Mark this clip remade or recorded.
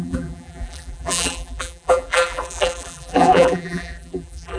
remade